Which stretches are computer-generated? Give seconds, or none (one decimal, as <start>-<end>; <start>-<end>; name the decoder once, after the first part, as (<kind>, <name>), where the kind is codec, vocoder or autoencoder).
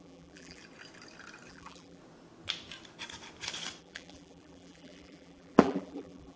0.0-0.6 (vocoder, BigVGAN v2); 1.5-2.0; 3.8-6.4